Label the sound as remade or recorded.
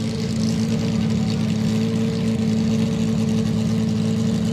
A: recorded